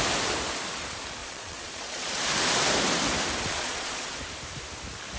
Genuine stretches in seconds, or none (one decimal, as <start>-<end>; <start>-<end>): 0.0-1.2; 2.2-3.5; 4.1-5.2